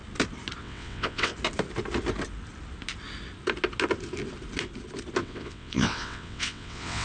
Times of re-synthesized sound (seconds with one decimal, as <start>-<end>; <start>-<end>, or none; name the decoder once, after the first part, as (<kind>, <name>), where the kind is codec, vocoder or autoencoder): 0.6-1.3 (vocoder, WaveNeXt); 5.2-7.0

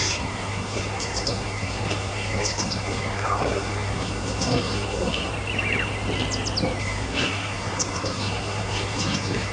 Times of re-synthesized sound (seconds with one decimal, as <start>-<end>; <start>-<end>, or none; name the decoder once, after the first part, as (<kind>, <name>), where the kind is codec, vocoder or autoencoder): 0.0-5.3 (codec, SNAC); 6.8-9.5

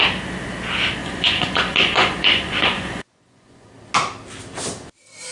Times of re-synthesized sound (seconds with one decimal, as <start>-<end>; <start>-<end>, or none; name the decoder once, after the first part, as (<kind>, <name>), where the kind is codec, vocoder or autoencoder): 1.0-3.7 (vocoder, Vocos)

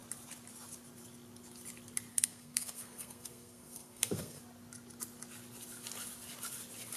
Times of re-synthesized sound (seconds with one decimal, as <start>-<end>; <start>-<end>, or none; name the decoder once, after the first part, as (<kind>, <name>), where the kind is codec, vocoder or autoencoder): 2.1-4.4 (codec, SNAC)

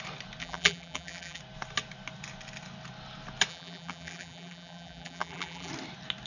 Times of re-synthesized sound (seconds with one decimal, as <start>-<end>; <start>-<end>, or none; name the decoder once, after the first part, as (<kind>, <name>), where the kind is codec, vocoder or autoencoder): 0.4-1.4 (vocoder, BigVGAN v2); 3.5-5.7

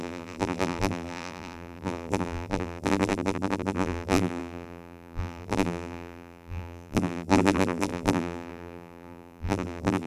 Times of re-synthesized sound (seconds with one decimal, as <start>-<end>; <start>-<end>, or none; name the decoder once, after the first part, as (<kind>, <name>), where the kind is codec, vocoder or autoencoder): 0.0-10.1 (vocoder, BigVGAN v2)

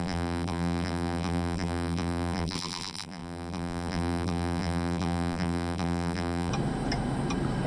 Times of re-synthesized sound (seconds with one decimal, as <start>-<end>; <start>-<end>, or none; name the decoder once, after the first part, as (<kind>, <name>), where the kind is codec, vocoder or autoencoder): 0.0-6.5 (vocoder, BigVGAN v2)